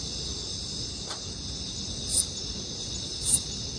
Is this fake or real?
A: real